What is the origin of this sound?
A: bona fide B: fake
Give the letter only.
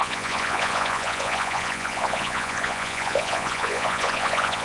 B